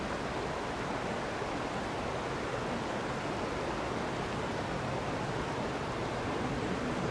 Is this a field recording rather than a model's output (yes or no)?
yes